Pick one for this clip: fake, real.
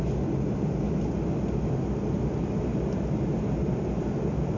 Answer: real